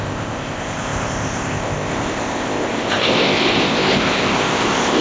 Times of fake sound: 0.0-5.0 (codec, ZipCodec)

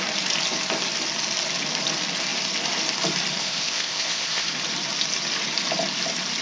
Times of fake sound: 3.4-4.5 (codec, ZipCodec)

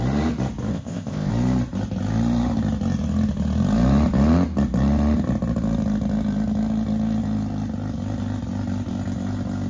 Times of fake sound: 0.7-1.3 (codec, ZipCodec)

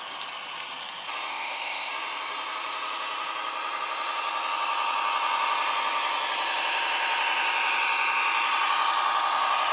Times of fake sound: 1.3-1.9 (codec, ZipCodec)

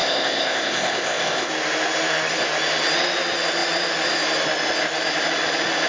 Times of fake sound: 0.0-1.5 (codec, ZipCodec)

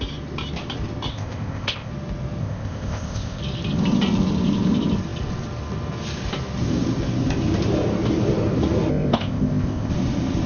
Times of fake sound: 1.1-1.9 (codec, ZipCodec); 2.4-3.4; 8.9-9.9